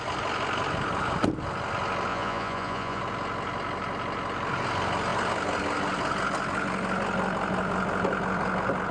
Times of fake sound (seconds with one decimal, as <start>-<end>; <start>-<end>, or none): 2.1-3.0

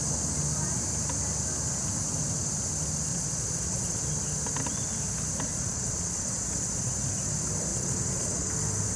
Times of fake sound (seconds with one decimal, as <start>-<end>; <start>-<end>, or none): 3.1-4.0; 5.5-6.9; 7.7-8.5

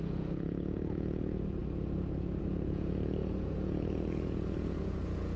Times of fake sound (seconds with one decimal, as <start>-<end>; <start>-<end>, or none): 0.0-1.6; 2.4-5.4